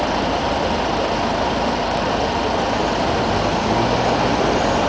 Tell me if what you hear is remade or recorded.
recorded